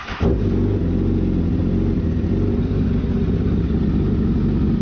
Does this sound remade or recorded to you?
recorded